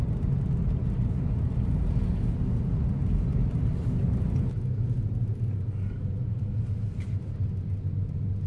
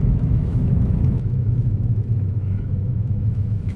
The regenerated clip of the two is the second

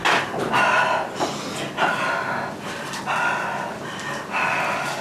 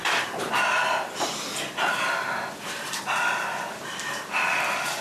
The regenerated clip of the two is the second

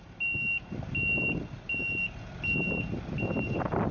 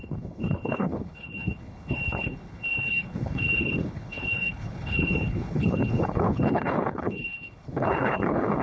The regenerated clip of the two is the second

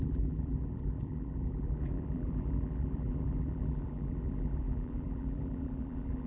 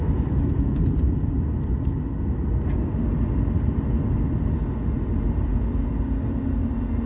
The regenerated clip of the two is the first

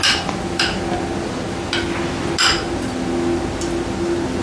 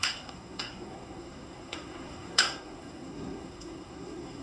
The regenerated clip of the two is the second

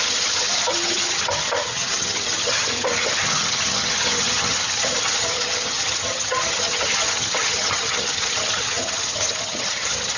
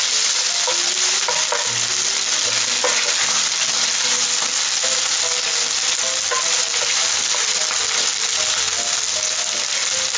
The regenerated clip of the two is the first